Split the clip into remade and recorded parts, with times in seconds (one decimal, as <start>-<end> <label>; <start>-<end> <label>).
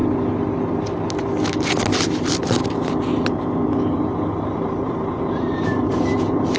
0.0-4.5 recorded; 4.5-6.6 remade